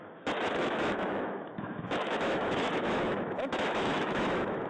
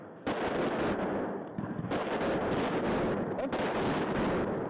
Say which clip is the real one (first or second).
second